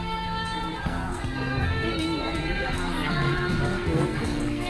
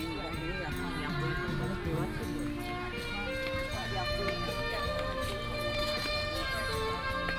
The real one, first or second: second